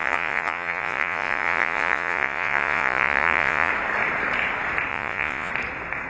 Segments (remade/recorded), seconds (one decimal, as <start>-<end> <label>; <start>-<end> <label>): 0.0-3.7 remade; 3.7-4.9 recorded; 4.9-5.5 remade; 5.5-6.1 recorded